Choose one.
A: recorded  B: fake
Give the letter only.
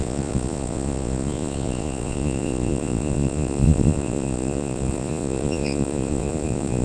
B